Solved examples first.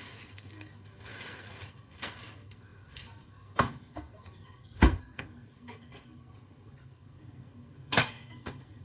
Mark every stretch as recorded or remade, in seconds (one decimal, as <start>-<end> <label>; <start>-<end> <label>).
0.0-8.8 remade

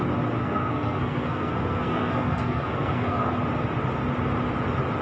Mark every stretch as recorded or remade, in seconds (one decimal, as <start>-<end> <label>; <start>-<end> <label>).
0.0-0.4 recorded; 0.4-3.3 remade; 3.3-5.0 recorded

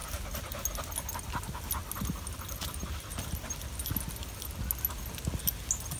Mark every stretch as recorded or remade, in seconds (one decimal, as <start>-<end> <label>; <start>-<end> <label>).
0.0-6.0 recorded

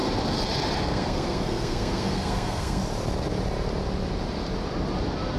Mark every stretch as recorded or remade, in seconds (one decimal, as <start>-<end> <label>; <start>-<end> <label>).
0.0-0.8 recorded; 0.8-2.8 remade; 2.8-5.4 recorded

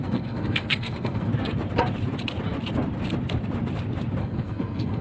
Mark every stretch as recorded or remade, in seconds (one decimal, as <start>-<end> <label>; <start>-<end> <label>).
0.0-1.3 remade; 1.3-4.2 recorded; 4.2-5.0 remade

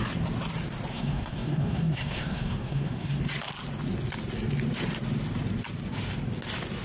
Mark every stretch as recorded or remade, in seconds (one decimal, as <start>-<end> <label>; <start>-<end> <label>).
0.0-0.9 recorded; 0.9-3.2 remade; 3.2-6.8 recorded